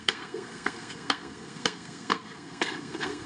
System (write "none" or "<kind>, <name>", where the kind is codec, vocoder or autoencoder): codec, SNAC